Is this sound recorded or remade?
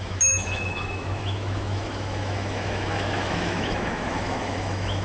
remade